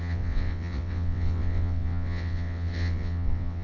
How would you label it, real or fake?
fake